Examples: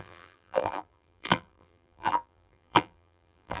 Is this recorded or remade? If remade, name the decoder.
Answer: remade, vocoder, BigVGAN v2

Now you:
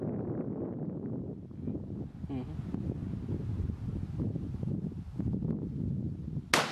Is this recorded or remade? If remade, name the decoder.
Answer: recorded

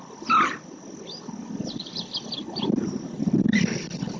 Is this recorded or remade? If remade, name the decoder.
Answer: recorded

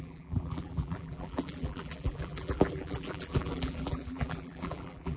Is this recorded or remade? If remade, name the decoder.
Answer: remade, vocoder, BigVGAN v2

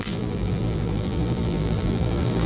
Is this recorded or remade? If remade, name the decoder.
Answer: remade, vocoder, BigVGAN v2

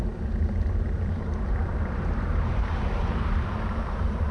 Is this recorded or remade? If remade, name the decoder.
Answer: remade, vocoder, BigVGAN v2